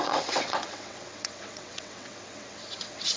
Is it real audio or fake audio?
fake